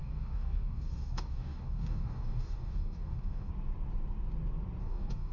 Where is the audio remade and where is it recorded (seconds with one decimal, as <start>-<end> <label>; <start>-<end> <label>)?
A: 0.0-3.5 remade; 3.5-4.8 recorded; 4.8-5.3 remade